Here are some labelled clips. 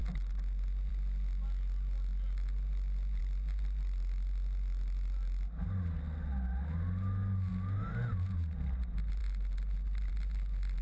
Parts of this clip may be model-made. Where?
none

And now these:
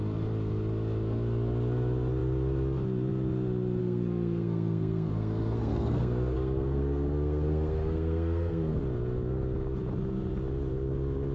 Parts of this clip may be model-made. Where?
3.8-8.8 (codec, SNAC)

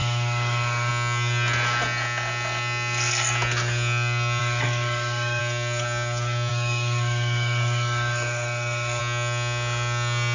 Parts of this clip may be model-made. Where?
0.0-0.9 (codec, DAC); 4.4-5.4; 6.5-9.0